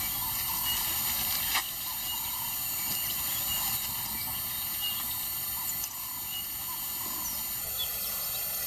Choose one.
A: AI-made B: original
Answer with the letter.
B